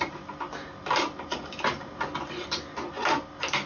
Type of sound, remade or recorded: recorded